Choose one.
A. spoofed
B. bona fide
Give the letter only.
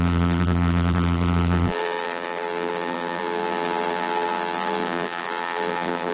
A